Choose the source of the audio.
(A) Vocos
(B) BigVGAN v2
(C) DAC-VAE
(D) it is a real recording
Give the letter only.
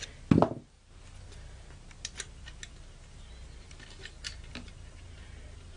D